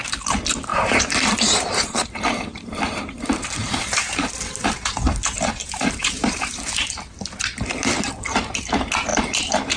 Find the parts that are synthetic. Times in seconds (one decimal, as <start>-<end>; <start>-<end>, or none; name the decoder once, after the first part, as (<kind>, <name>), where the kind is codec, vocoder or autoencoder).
0.7-3.2 (vocoder, BigVGAN v2); 3.6-6.9; 9.1-9.8